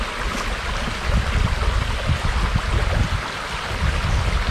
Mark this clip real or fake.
real